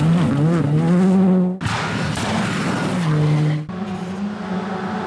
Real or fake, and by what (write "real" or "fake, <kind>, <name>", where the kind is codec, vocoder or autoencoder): real